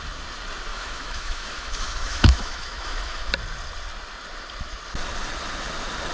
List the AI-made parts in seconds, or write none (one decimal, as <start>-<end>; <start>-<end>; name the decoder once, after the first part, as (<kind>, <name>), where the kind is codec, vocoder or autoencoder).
0.7-3.3 (autoencoder, DAC-VAE)

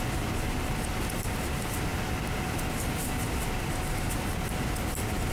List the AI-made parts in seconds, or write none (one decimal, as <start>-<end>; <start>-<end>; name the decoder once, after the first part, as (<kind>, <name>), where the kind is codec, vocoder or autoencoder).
none

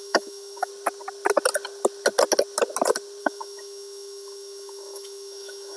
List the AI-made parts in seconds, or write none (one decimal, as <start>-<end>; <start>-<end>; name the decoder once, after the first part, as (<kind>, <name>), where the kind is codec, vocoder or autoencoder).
0.0-0.7 (autoencoder, DAC-VAE); 3.2-5.8

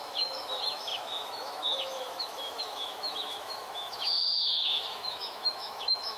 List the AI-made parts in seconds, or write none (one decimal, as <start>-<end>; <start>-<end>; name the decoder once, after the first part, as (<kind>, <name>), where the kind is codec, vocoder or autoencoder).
0.0-6.2 (autoencoder, DAC-VAE)

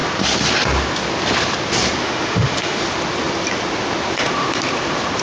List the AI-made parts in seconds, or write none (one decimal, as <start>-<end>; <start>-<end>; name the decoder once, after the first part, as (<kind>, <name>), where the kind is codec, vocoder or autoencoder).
2.0-2.8 (autoencoder, DAC-VAE)

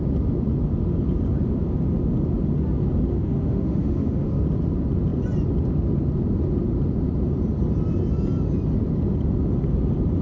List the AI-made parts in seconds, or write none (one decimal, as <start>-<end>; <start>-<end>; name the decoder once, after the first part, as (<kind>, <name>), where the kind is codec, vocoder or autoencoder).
3.1-4.4 (autoencoder, DAC-VAE)

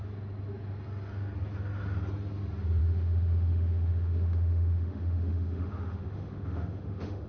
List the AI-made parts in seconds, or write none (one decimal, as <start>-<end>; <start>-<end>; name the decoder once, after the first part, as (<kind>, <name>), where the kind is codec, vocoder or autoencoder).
2.8-7.3 (autoencoder, DAC-VAE)